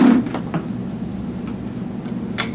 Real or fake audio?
real